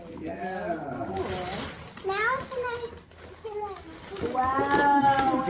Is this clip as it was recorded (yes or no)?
yes